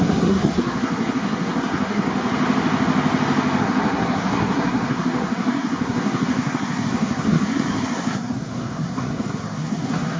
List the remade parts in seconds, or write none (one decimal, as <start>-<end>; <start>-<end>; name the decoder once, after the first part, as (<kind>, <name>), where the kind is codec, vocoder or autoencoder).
0.0-2.1 (codec, SNAC); 3.6-10.2